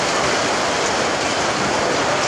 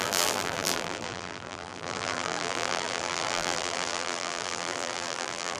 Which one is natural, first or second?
first